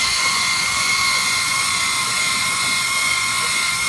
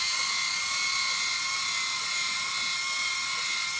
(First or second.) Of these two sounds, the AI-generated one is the first